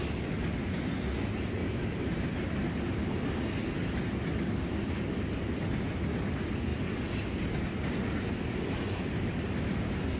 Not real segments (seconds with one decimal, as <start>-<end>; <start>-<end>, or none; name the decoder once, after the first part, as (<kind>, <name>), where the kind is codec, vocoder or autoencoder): 1.6-2.8 (vocoder, BigVGAN v2)